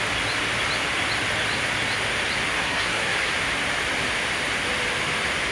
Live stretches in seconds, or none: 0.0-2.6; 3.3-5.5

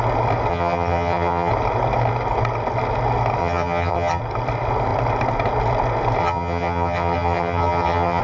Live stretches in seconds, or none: 0.0-0.5; 1.5-3.4; 4.2-6.2

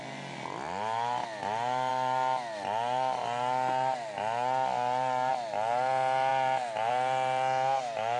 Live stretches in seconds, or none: 0.0-8.2

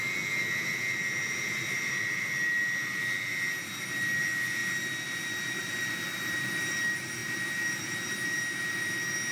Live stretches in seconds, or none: 0.0-9.3